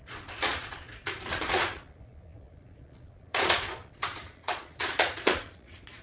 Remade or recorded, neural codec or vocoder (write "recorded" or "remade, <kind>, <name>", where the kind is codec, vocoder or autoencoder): remade, vocoder, Vocos